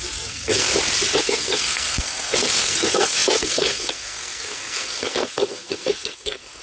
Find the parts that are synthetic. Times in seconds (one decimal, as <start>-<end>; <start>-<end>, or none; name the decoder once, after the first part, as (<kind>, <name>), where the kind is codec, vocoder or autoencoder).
0.0-0.7 (codec, SNAC); 1.2-6.6